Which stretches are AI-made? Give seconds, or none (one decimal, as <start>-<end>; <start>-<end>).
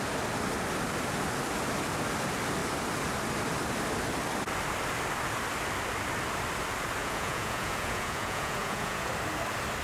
7.0-9.1